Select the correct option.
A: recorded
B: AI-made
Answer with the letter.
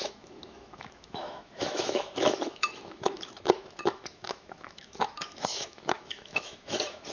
B